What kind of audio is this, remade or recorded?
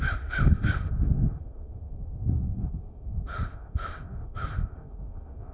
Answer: remade